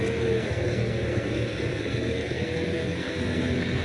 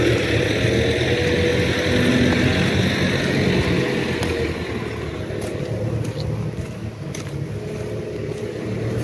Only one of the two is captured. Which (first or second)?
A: second